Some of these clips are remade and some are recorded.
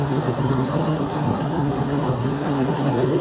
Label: remade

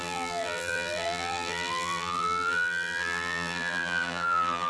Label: remade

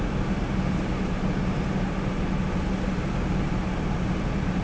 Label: recorded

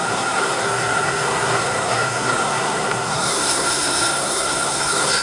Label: remade